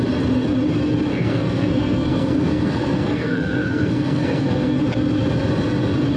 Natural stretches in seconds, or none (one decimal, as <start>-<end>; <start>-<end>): 0.0-1.1; 4.8-6.2